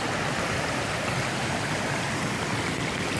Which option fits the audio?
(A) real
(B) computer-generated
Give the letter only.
B